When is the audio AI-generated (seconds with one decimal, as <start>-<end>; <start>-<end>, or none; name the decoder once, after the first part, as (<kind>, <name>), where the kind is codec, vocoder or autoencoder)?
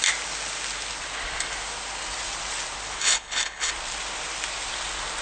3.0-3.7 (codec, HILCodec)